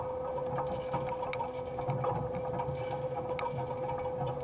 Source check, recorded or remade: recorded